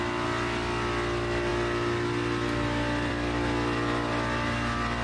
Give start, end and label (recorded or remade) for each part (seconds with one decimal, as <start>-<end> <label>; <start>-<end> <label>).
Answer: 0.0-5.0 recorded